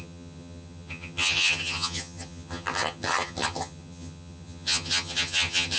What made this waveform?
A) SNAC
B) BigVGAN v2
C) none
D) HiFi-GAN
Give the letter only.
D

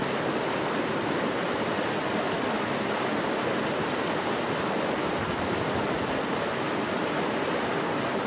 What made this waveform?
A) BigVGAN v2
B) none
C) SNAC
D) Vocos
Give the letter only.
B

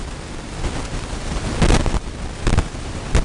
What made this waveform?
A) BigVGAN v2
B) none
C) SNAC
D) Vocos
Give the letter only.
B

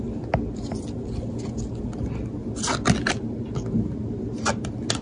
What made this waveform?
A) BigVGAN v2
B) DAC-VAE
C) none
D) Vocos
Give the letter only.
C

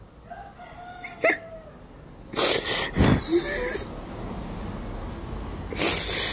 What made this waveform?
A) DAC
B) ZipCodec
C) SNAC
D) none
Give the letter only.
D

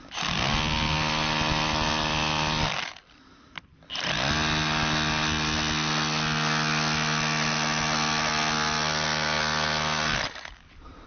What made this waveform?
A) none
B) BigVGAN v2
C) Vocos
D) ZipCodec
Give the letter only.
A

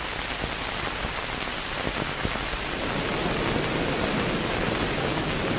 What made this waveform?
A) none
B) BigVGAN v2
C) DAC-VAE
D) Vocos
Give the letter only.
A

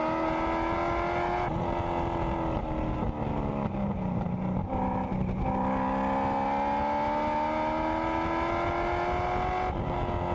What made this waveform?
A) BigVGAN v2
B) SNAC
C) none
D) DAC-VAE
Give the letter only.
C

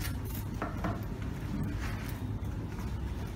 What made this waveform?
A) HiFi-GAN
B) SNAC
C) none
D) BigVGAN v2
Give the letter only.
C